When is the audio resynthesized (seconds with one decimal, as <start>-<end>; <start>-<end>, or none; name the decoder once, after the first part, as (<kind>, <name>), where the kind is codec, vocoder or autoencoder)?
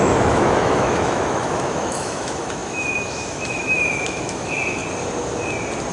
0.0-4.8 (autoencoder, DAC-VAE)